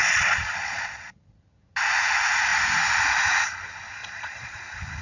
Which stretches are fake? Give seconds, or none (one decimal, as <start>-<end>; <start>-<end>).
0.0-1.7; 4.0-4.6